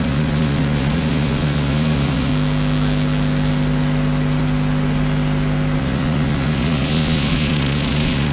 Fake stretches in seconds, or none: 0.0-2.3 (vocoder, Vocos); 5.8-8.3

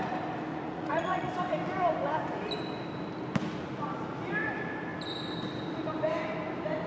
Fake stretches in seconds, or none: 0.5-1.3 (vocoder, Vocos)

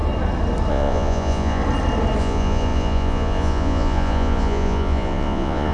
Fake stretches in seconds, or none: 0.7-1.6 (vocoder, Vocos); 2.2-5.7

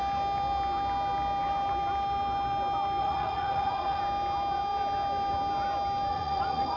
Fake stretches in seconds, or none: 3.0-4.0 (vocoder, Vocos); 6.1-6.8

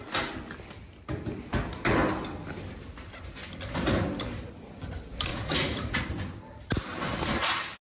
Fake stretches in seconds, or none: 5.3-6.0 (vocoder, Vocos)

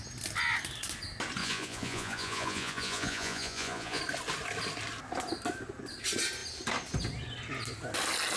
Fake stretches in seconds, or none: 1.4-4.0 (vocoder, Vocos)

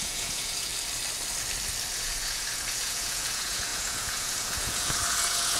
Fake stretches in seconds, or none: 0.0-0.7 (vocoder, Vocos); 1.9-5.6